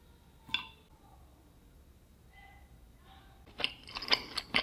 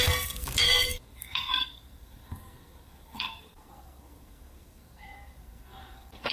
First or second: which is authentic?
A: first